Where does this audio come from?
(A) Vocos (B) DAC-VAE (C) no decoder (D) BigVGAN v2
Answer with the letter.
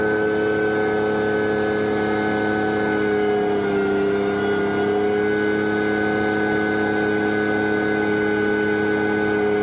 C